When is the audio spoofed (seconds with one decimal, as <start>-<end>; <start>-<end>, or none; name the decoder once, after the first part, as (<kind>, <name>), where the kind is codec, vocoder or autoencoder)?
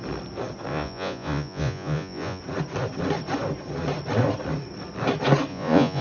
0.7-2.4 (vocoder, Vocos); 5.5-6.0